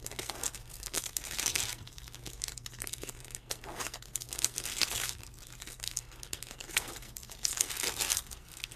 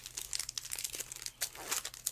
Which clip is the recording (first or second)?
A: second